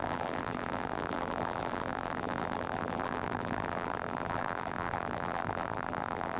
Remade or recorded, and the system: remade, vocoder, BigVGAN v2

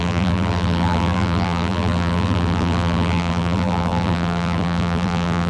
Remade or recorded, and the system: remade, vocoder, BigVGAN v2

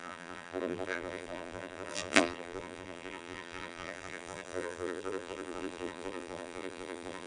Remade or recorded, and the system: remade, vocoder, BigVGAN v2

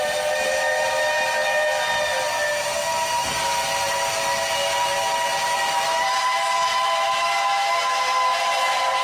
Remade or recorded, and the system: recorded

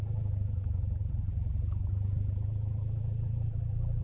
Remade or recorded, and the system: remade, vocoder, BigVGAN v2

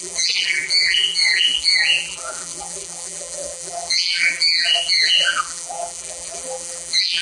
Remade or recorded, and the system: remade, vocoder, BigVGAN v2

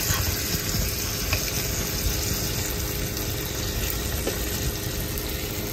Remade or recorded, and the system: recorded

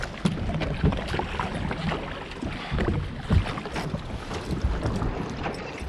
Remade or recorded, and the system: recorded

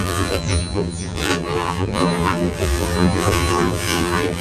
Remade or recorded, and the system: remade, vocoder, BigVGAN v2